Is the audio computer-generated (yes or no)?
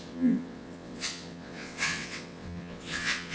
yes